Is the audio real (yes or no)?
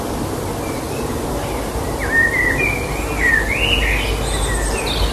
yes